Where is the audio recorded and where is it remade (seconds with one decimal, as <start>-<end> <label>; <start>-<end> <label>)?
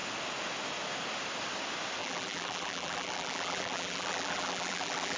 0.0-2.0 recorded; 2.0-5.2 remade